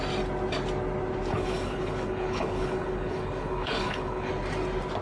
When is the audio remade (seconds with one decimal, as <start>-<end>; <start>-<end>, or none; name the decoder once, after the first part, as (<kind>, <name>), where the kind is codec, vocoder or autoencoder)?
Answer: 1.3-4.3 (codec, HILCodec)